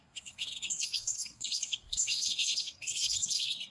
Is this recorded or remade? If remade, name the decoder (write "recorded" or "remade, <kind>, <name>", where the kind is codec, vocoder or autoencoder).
remade, codec, SNAC